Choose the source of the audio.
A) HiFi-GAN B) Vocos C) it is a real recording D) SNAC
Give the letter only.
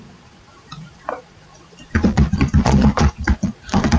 B